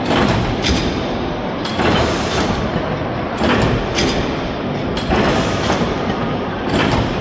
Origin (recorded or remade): remade